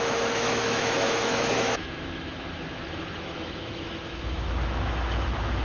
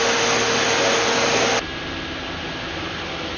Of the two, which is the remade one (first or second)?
first